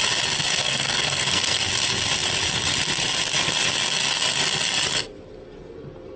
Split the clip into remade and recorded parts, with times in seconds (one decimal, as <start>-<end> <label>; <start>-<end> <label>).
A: 0.0-0.6 recorded; 0.6-1.6 remade; 1.6-6.2 recorded